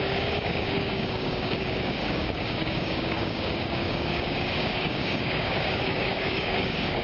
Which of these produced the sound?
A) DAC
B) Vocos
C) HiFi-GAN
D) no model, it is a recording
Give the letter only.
A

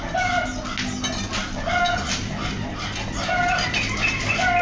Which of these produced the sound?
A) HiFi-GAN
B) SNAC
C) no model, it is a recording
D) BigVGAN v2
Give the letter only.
C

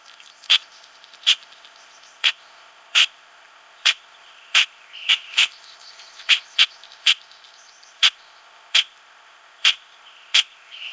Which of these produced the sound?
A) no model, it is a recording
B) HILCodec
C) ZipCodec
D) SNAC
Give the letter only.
C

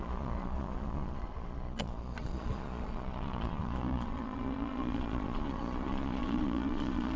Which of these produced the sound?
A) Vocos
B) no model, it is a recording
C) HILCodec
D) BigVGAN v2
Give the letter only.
A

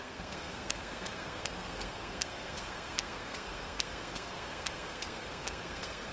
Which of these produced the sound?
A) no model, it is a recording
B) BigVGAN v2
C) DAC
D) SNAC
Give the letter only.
D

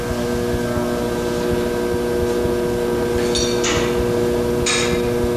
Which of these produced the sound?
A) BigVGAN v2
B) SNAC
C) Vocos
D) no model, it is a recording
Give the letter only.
D